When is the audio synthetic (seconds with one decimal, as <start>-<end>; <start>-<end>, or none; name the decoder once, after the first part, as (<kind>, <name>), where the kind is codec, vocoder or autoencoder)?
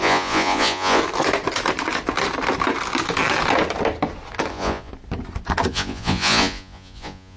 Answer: 0.0-1.0 (vocoder, Vocos); 4.5-4.9; 5.7-7.4